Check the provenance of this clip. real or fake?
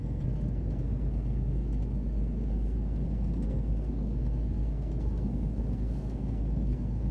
fake